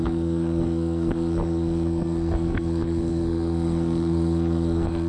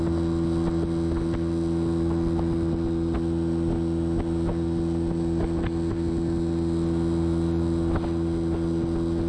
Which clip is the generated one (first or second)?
first